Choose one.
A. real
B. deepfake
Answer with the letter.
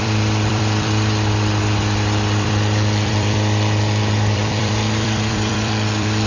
B